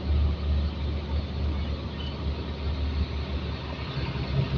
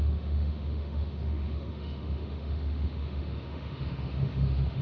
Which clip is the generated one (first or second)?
second